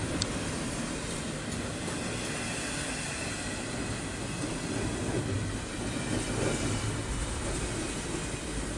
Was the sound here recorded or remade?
recorded